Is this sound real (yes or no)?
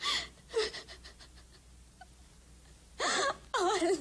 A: yes